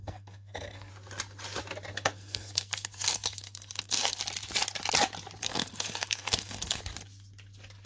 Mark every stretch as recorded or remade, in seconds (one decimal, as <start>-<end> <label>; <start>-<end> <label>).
0.0-0.9 remade; 0.9-1.9 recorded; 1.9-4.2 remade; 4.2-5.4 recorded; 5.4-6.8 remade; 6.8-7.9 recorded

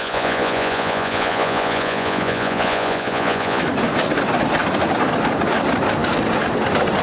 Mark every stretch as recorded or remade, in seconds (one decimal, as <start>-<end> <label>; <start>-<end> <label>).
0.0-3.6 remade; 3.6-7.0 recorded

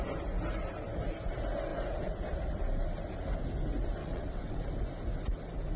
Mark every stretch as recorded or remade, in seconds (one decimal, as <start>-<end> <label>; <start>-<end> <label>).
0.0-4.0 recorded; 4.0-4.6 remade; 4.6-5.8 recorded

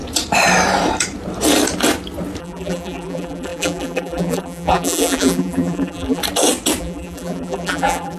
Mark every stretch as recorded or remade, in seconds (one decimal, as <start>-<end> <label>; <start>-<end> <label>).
0.0-2.4 recorded; 2.4-6.2 remade; 6.2-6.8 recorded; 6.8-8.2 remade

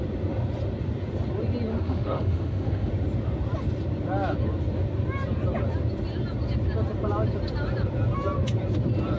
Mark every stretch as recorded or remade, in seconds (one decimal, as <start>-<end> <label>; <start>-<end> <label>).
0.0-1.7 recorded; 1.7-2.9 remade; 2.9-9.2 recorded